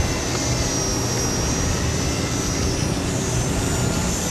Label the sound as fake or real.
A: real